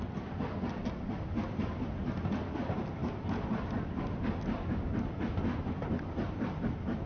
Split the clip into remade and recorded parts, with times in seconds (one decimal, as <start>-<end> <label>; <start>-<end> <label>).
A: 0.0-7.1 recorded